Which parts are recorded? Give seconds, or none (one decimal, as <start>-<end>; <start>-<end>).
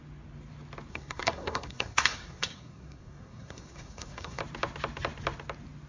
0.0-0.9; 4.4-5.9